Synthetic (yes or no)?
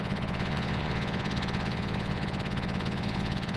yes